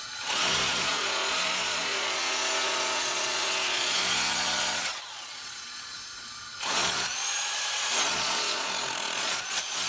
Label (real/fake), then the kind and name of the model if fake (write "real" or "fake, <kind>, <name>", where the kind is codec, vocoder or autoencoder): fake, vocoder, Vocos